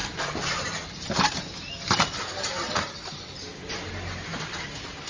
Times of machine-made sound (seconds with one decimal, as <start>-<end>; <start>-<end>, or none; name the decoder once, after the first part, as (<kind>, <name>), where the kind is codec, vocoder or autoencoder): none